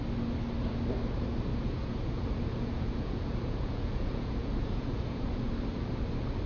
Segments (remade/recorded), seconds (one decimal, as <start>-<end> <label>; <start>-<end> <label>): 0.0-1.5 recorded; 1.5-5.4 remade; 5.4-6.5 recorded